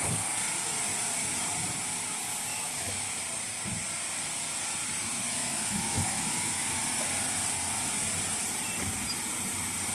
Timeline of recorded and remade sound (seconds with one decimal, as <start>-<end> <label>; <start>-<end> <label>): 0.0-2.5 recorded; 2.5-3.2 remade; 3.2-4.8 recorded; 4.8-6.8 remade; 6.8-9.9 recorded